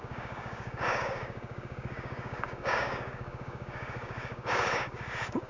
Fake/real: fake